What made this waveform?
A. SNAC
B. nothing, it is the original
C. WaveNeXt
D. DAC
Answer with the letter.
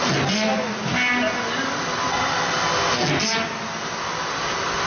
B